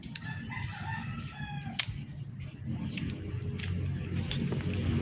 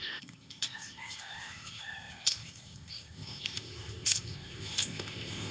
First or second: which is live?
first